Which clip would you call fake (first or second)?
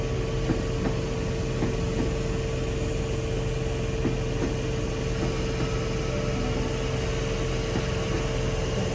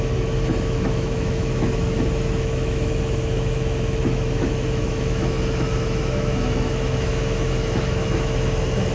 second